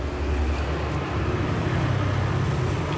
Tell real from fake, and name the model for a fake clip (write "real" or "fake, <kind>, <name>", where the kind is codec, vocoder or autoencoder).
real